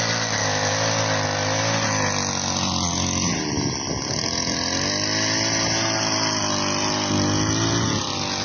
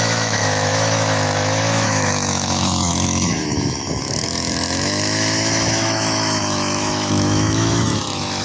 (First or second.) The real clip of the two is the first